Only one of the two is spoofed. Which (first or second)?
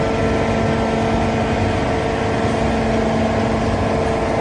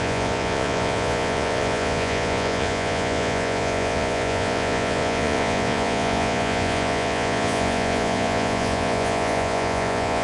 second